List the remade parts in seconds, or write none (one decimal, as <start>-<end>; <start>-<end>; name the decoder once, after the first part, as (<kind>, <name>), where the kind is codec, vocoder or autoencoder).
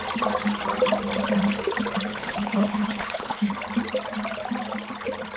2.1-3.5 (codec, HILCodec)